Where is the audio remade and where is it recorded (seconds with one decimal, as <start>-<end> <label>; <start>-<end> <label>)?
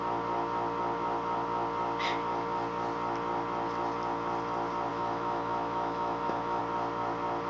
0.0-4.9 recorded; 4.9-6.6 remade; 6.6-7.5 recorded